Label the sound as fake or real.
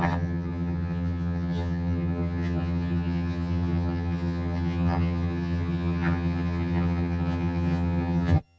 fake